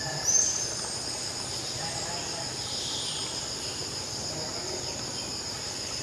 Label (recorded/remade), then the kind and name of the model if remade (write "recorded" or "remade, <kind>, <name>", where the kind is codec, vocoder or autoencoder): recorded